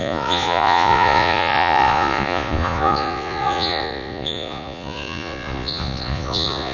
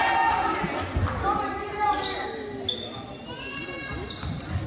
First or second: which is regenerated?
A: first